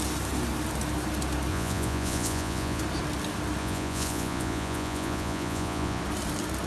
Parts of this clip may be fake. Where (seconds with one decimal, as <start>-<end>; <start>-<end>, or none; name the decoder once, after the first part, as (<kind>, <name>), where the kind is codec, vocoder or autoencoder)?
1.5-2.8 (vocoder, Vocos); 3.6-6.0